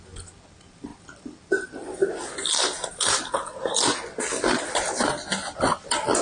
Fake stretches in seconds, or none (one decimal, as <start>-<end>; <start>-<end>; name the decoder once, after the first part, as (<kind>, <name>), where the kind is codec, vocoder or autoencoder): none